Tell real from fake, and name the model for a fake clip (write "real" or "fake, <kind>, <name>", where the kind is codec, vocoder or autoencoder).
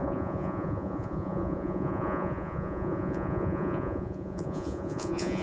fake, vocoder, Vocos